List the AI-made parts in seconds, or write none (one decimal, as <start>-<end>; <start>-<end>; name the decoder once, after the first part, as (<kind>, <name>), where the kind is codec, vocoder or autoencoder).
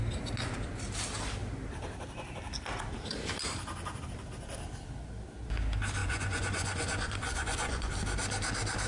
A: 6.0-7.9 (vocoder, Vocos)